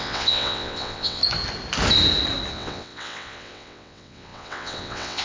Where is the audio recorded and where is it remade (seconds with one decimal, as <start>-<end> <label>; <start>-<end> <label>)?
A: 0.0-1.2 remade; 1.2-2.5 recorded; 2.5-5.2 remade